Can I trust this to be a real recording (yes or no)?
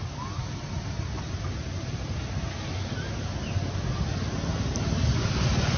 yes